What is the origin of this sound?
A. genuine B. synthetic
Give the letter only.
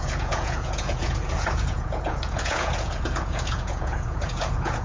B